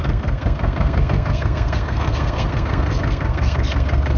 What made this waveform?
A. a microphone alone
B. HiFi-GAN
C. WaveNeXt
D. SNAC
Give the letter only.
D